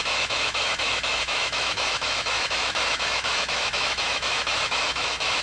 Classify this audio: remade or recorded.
remade